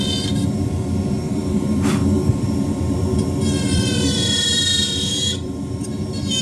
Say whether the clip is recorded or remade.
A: remade